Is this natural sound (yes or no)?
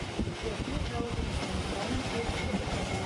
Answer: yes